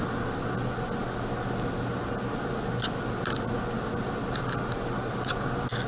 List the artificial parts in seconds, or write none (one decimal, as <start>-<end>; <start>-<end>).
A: 4.2-5.2